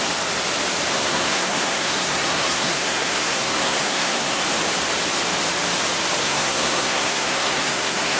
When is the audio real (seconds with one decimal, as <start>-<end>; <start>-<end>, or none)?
0.0-0.9; 4.4-6.2